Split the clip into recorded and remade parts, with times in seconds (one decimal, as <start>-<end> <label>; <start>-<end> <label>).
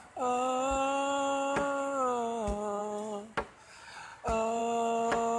0.0-5.4 recorded